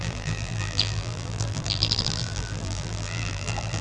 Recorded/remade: remade